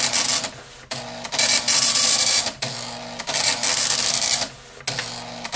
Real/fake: real